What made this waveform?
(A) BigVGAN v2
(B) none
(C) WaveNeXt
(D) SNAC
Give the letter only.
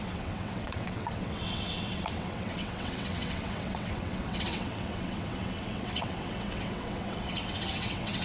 C